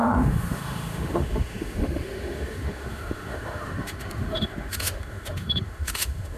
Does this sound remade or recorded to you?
remade